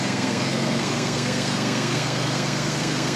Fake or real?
fake